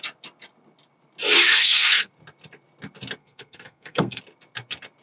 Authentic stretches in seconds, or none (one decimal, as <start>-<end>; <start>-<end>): 0.0-1.5; 2.1-3.2; 4.2-5.0